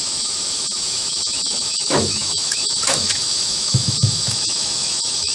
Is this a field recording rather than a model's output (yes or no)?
no